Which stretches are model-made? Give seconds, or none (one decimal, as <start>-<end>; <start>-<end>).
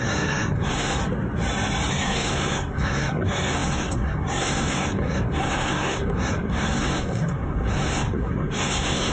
0.0-1.0; 1.9-9.1